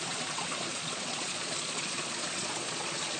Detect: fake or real fake